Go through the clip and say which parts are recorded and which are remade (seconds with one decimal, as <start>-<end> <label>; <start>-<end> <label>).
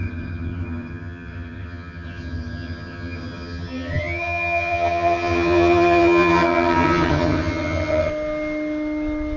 0.0-8.1 remade; 8.1-9.4 recorded